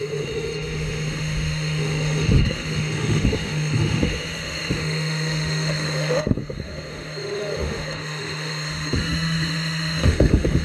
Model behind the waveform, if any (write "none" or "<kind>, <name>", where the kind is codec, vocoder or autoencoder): autoencoder, DAC-VAE